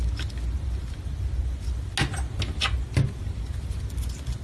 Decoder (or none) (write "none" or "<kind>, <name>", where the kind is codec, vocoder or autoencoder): none